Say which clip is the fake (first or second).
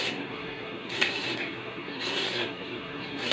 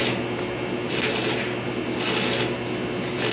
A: first